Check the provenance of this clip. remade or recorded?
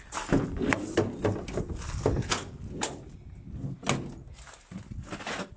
recorded